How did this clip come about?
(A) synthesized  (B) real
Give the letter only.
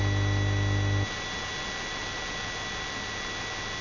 B